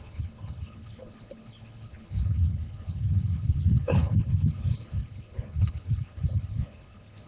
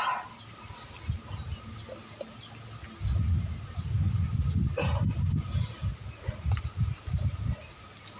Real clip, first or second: second